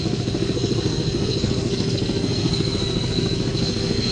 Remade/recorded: remade